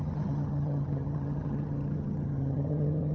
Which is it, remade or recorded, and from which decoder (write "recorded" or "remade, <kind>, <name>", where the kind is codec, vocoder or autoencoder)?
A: remade, vocoder, HiFi-GAN